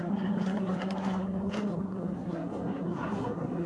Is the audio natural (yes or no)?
no